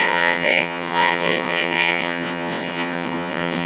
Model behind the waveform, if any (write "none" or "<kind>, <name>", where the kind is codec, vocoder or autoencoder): vocoder, WaveNeXt